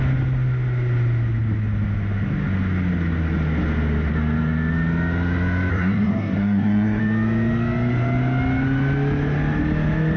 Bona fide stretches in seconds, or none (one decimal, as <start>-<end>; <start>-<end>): 0.0-5.7; 7.0-10.2